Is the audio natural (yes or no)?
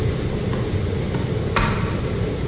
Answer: yes